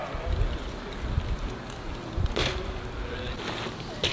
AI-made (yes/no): no